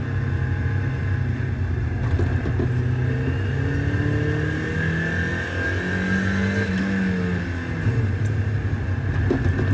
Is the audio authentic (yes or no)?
yes